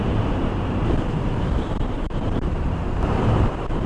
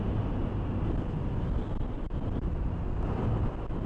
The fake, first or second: first